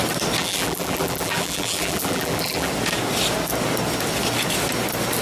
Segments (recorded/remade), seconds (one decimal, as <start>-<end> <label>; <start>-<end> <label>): 0.0-0.4 recorded; 0.4-2.7 remade; 2.7-5.2 recorded